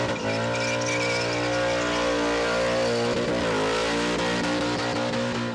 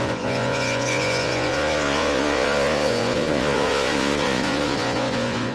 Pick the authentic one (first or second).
first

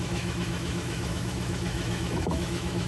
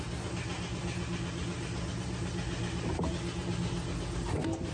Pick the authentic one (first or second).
second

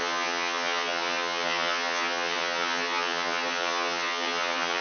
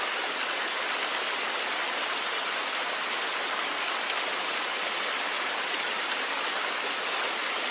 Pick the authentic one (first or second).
second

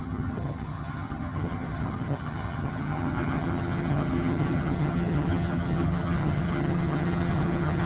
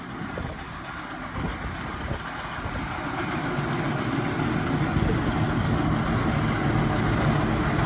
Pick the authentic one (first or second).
second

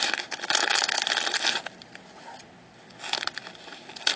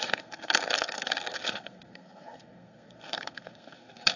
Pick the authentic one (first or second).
first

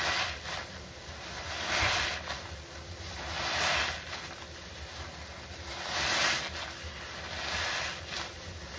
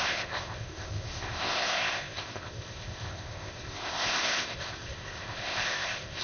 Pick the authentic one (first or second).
first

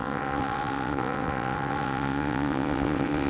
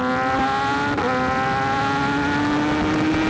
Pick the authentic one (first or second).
second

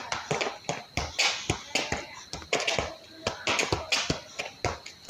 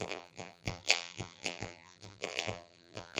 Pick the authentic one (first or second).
first